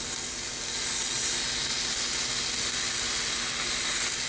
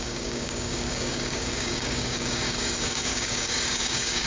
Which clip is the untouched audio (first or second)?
first